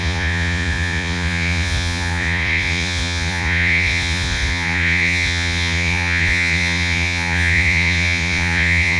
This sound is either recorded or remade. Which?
remade